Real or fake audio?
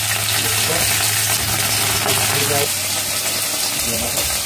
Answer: real